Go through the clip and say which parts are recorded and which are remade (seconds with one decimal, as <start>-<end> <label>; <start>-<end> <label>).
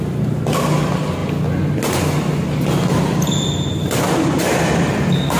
0.0-5.4 recorded